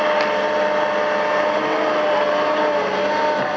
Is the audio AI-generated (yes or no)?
no